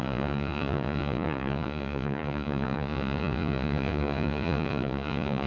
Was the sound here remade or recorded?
remade